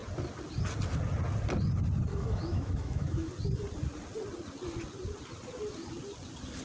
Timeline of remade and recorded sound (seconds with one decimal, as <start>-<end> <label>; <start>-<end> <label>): 0.0-2.1 recorded; 2.1-3.3 remade; 3.3-6.6 recorded

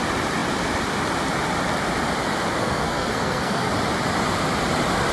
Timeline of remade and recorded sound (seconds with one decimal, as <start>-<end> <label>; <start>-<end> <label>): 0.0-2.6 recorded; 2.6-3.7 remade; 3.7-5.1 recorded

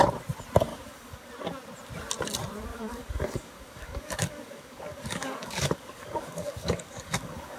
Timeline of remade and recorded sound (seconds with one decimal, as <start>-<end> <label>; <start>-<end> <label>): 0.0-0.7 recorded; 0.7-1.3 remade; 1.3-2.7 recorded; 2.7-7.6 remade

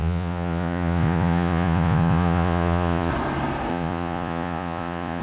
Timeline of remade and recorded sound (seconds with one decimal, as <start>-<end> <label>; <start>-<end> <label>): 0.0-3.1 remade; 3.1-3.7 recorded; 3.7-5.2 remade

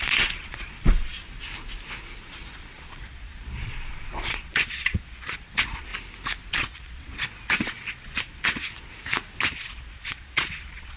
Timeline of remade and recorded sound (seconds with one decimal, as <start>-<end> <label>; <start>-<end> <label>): 0.0-1.2 remade; 1.2-2.2 recorded; 2.2-5.9 remade; 5.9-6.5 recorded; 6.5-8.9 remade; 8.9-9.5 recorded; 9.5-11.0 remade

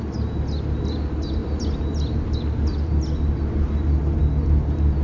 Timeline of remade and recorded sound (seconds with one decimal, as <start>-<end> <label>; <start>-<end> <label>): 0.0-5.0 recorded

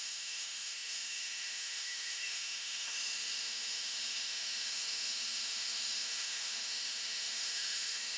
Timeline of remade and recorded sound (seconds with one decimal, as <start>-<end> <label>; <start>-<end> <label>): 0.0-8.2 remade